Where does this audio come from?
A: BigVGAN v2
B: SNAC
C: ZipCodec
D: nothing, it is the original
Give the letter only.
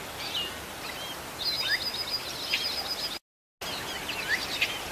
D